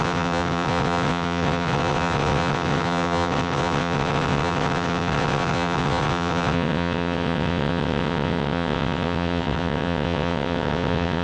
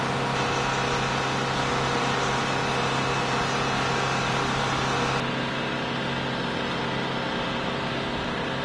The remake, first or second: first